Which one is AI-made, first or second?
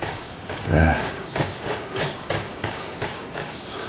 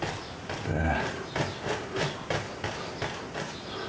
first